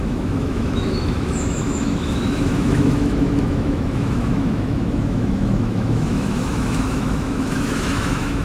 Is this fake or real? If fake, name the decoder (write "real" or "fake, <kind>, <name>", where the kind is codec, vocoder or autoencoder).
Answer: fake, autoencoder, DAC-VAE